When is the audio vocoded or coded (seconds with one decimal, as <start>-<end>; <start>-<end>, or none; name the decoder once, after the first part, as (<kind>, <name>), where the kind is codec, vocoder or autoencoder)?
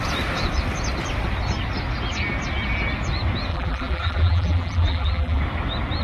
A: 3.5-5.4 (vocoder, BigVGAN v2)